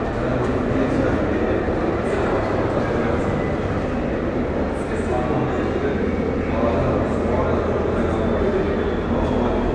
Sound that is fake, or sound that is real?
real